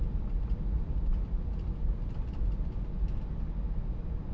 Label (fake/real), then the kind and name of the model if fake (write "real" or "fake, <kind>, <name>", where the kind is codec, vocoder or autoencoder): real